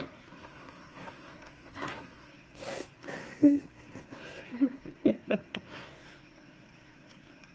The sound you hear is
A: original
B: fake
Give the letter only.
B